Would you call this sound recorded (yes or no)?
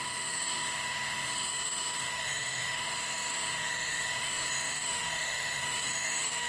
no